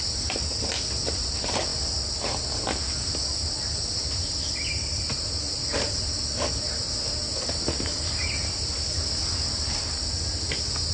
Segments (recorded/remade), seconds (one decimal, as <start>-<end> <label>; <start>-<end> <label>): 0.0-10.9 recorded